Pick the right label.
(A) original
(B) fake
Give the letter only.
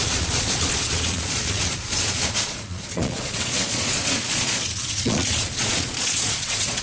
B